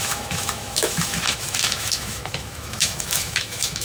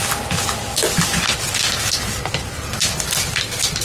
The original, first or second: second